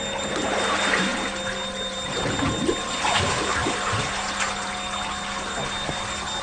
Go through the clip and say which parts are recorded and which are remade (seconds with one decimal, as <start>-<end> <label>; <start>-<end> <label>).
0.0-6.4 recorded

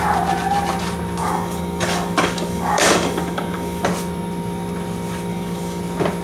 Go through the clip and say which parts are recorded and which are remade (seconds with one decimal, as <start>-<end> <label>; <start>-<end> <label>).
0.0-1.2 recorded; 1.2-3.8 remade; 3.8-5.3 recorded; 5.3-5.8 remade; 5.8-6.2 recorded